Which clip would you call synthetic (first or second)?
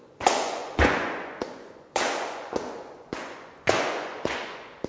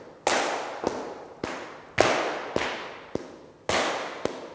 first